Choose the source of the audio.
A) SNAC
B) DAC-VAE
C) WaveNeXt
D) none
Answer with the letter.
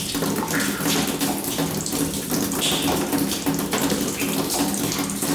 D